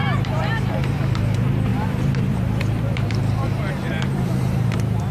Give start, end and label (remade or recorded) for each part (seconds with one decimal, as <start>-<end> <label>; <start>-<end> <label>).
0.0-5.1 remade